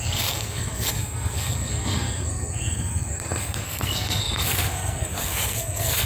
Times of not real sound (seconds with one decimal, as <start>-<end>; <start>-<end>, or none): 0.0-6.1